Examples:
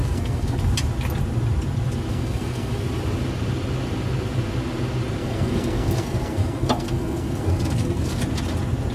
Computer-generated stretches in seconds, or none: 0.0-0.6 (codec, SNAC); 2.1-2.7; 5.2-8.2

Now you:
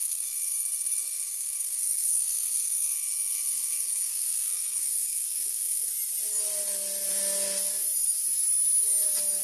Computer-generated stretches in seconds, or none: 0.0-5.9 (codec, SNAC)

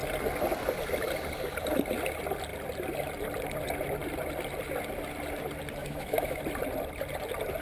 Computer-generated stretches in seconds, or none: 5.8-6.4 (autoencoder, DAC-VAE)